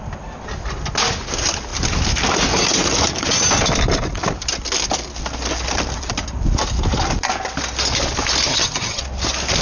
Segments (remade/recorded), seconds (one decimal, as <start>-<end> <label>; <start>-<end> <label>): 0.0-8.5 recorded; 8.5-9.0 remade; 9.0-9.6 recorded